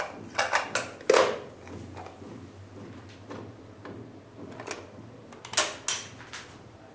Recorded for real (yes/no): yes